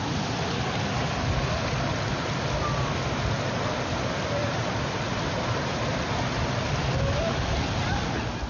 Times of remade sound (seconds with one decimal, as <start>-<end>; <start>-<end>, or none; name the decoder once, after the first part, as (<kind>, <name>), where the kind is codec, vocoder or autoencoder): 3.9-5.9 (vocoder, BigVGAN v2)